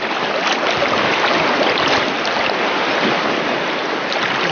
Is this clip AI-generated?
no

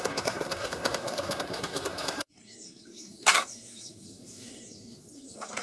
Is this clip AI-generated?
yes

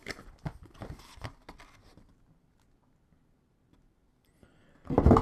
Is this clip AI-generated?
no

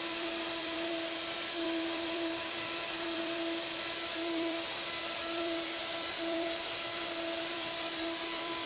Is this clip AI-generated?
yes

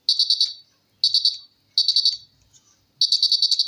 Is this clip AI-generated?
no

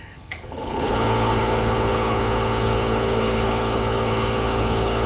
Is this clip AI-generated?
yes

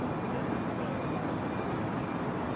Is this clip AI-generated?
no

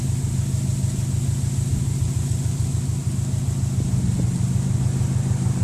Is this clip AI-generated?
no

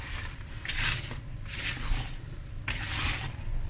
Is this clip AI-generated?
no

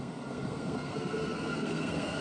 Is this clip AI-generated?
yes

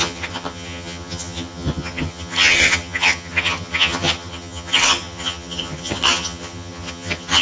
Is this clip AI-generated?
yes